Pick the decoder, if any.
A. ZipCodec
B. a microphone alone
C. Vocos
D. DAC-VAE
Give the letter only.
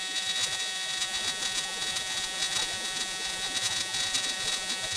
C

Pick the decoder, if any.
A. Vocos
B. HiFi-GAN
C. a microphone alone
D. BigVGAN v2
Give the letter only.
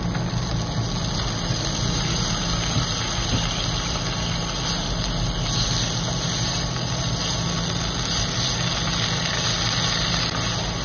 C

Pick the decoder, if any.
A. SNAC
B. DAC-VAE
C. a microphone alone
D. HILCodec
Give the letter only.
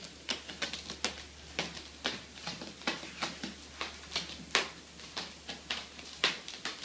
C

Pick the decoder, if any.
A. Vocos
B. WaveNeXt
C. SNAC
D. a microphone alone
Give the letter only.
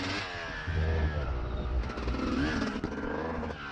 D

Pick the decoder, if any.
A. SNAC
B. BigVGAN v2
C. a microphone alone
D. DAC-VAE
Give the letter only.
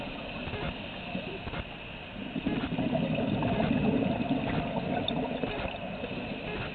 C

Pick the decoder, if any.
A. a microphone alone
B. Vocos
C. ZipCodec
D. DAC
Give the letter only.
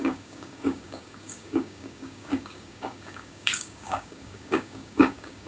D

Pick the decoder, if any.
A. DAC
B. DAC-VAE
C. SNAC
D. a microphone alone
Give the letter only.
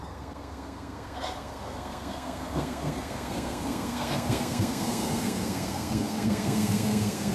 C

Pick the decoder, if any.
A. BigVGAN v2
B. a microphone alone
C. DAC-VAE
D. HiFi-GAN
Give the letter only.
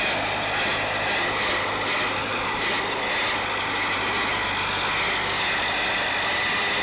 B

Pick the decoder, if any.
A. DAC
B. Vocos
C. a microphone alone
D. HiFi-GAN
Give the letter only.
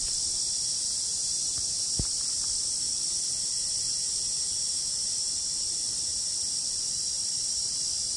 C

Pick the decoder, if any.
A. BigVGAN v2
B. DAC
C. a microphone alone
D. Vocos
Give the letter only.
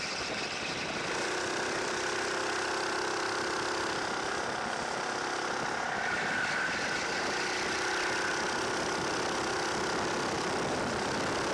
C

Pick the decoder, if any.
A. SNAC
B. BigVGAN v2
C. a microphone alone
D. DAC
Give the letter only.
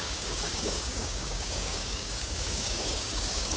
D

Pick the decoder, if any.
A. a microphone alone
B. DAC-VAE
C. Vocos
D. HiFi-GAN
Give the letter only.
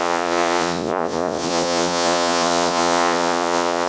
C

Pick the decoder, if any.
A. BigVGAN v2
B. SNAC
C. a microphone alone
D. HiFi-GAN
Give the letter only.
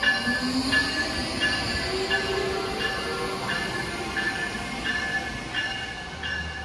C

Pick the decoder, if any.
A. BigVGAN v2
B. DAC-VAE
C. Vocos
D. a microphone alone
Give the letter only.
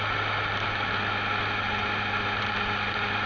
D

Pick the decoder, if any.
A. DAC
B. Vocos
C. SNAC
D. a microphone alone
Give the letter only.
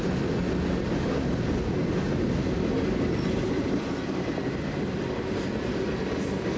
D